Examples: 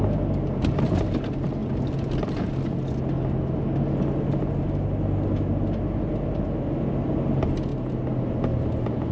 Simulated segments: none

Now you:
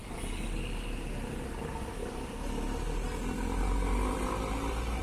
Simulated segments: none

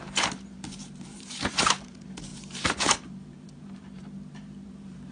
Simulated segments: 0.0-5.1 (vocoder, BigVGAN v2)

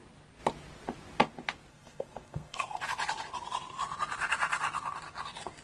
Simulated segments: 1.7-2.8 (codec, SNAC)

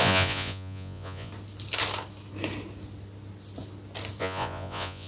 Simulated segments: 0.0-1.3 (vocoder, Vocos); 4.2-5.1

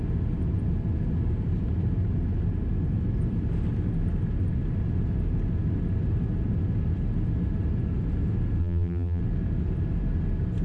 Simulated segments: 8.6-9.2 (vocoder, BigVGAN v2)

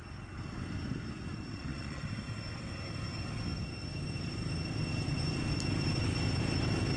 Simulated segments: 1.5-2.0 (vocoder, Vocos)